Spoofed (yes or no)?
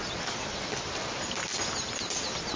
no